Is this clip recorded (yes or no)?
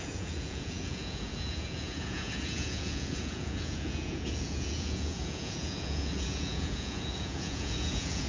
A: no